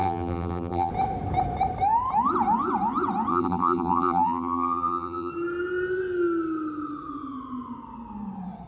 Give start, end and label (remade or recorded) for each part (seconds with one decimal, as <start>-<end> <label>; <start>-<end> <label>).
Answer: 0.0-0.9 remade; 0.9-3.3 recorded; 3.3-5.3 remade; 5.3-8.7 recorded